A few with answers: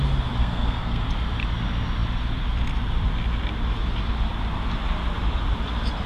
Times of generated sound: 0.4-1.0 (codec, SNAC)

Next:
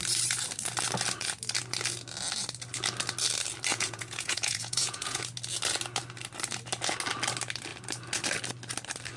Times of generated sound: 3.7-5.2 (vocoder, Vocos)

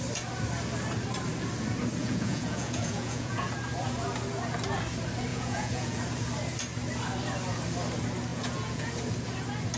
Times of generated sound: 2.0-3.5 (vocoder, Vocos); 5.3-6.0; 8.3-8.9